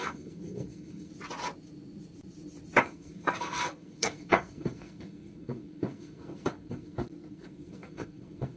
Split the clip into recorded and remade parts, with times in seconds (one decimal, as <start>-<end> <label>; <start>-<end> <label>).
0.0-1.1 remade; 1.1-2.8 recorded; 2.8-8.6 remade